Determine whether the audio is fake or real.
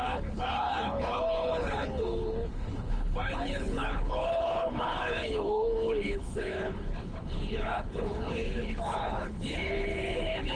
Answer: fake